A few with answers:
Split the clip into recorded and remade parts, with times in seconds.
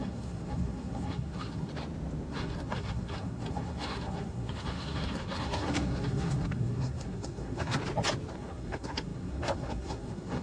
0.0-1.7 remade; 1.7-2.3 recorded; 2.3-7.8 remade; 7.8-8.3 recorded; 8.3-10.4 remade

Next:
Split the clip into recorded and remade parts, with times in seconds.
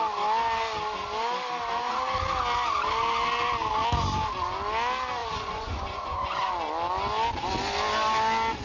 0.0-5.2 recorded; 5.2-6.4 remade; 6.4-8.6 recorded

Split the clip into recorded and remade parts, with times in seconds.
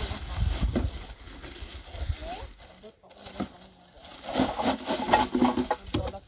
0.0-6.3 recorded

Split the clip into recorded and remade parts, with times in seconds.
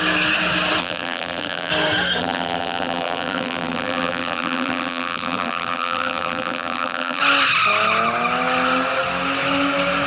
0.0-0.8 recorded; 0.8-1.7 remade; 1.7-2.2 recorded; 2.2-7.2 remade; 7.2-10.1 recorded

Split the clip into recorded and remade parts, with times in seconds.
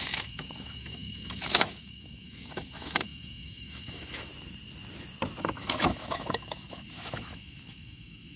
0.0-4.3 remade; 4.3-5.4 recorded; 5.4-8.4 remade